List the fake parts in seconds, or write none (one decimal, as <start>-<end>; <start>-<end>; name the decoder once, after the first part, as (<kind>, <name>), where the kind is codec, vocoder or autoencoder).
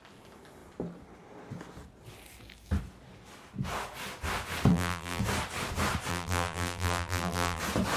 4.7-5.2 (vocoder, BigVGAN v2); 6.1-7.6